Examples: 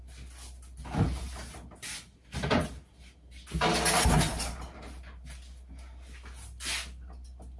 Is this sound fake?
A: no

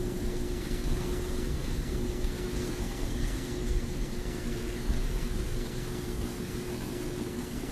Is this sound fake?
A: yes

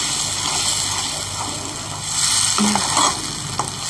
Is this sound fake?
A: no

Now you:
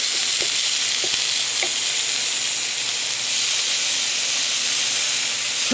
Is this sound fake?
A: no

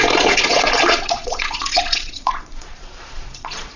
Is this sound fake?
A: yes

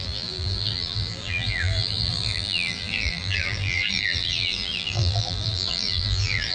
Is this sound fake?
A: yes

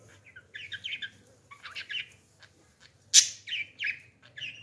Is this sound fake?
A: no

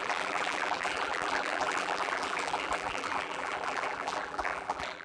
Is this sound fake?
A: yes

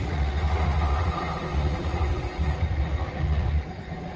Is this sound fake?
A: yes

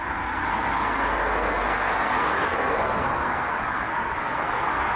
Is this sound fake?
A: yes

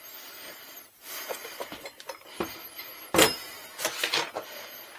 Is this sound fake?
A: yes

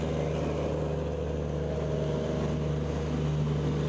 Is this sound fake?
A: no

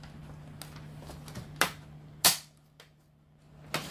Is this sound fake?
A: no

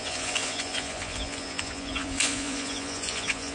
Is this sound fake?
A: yes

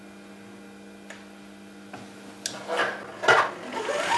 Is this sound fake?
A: no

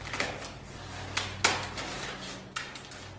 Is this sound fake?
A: no